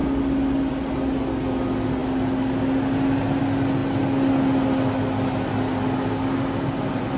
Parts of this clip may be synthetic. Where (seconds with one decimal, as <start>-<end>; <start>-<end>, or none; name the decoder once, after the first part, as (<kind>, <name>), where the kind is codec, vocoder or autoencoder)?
none